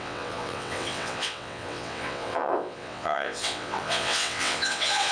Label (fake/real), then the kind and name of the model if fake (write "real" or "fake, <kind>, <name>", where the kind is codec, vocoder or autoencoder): fake, vocoder, WaveNeXt